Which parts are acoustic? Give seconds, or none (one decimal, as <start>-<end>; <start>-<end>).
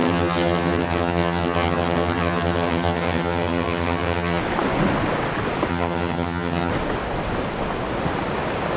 4.4-5.7; 6.7-8.8